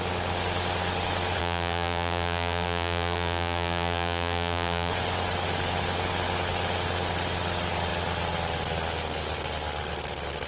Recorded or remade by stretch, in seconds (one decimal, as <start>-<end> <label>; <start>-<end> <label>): 0.0-1.4 recorded; 1.4-4.9 remade; 4.9-10.5 recorded